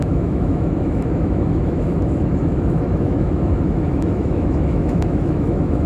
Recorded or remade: remade